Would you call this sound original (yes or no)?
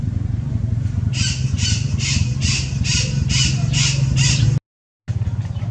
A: yes